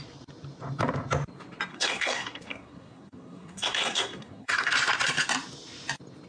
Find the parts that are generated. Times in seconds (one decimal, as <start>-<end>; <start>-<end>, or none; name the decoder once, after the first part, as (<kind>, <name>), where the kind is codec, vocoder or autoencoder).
1.7-4.7 (codec, SNAC)

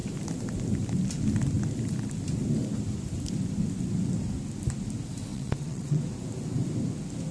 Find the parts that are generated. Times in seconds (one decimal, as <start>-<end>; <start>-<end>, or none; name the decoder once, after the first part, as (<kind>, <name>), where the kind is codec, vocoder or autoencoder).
5.3-6.0 (vocoder, WaveNeXt)